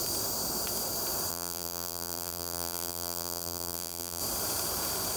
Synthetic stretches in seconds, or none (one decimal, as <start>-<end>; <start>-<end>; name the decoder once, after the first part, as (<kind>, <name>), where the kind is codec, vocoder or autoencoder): 1.3-4.2 (vocoder, BigVGAN v2)